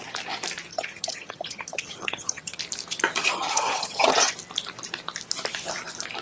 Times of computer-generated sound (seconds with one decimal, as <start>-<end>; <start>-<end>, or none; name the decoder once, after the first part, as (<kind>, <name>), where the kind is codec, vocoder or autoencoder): 0.7-2.6 (vocoder, HiFi-GAN); 3.2-4.3